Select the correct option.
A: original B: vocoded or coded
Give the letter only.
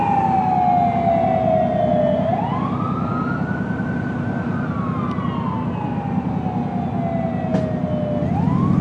A